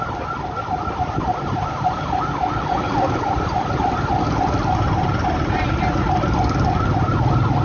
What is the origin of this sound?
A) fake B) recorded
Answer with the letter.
B